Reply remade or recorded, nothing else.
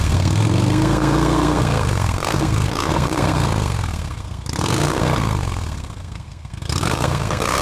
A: remade